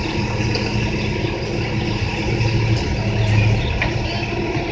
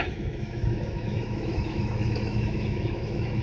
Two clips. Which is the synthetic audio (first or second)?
second